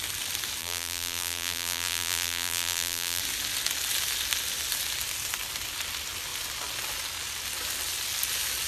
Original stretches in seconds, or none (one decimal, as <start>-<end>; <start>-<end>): 0.0-0.6; 3.2-8.7

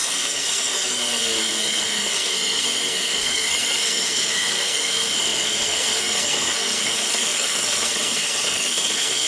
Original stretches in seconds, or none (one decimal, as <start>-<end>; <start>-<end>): none